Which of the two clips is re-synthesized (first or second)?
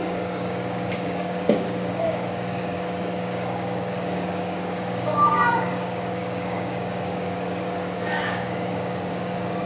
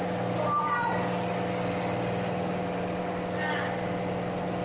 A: first